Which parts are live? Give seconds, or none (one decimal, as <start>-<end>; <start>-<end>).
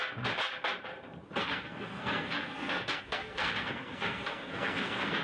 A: 0.0-1.4